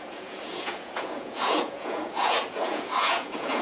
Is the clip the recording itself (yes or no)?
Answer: no